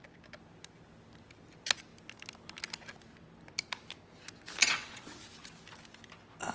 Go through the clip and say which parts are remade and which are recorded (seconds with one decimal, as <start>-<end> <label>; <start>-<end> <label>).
0.0-4.6 recorded; 4.6-5.2 remade; 5.2-6.5 recorded